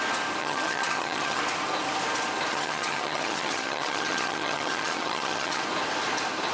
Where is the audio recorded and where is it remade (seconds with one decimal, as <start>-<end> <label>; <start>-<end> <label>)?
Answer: 0.0-0.4 recorded; 0.4-1.4 remade; 1.4-2.5 recorded; 2.5-5.6 remade; 5.6-6.5 recorded

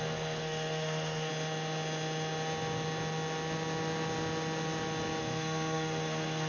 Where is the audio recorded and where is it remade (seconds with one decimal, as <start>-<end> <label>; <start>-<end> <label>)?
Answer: 0.0-1.3 remade; 1.3-5.2 recorded; 5.2-6.5 remade

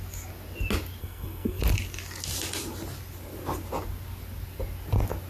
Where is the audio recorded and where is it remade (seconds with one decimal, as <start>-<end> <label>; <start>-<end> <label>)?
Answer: 0.0-1.0 recorded; 1.0-1.6 remade; 1.6-5.3 recorded

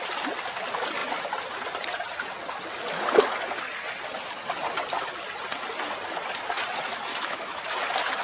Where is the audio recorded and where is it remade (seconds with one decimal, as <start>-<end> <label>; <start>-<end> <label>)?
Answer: 0.0-7.1 recorded; 7.1-7.6 remade; 7.6-8.2 recorded

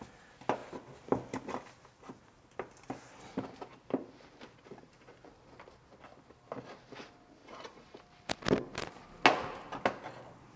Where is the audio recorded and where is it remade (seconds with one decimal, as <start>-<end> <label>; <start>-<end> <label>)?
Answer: 0.0-7.4 recorded; 7.4-8.0 remade; 8.0-10.6 recorded

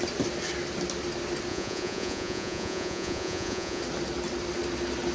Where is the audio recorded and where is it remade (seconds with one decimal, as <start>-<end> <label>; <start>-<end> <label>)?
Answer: 0.0-1.5 recorded; 1.5-3.8 remade; 3.8-5.1 recorded